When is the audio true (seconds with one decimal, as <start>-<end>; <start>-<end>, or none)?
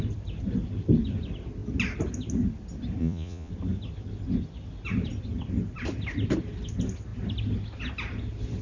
0.0-3.0; 3.5-8.6